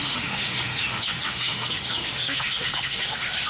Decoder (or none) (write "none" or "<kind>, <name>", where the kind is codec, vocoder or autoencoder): autoencoder, DAC-VAE